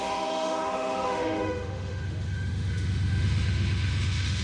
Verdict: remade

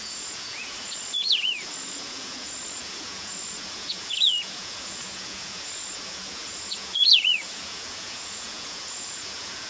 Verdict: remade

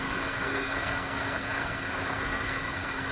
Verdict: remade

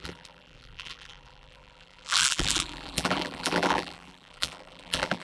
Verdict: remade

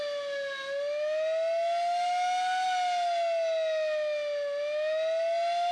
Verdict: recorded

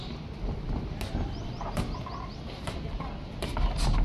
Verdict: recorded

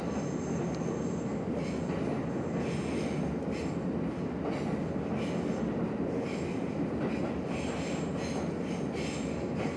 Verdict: recorded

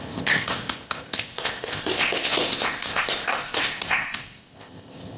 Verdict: remade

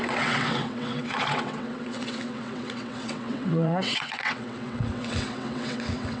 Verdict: remade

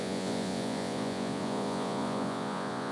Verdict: remade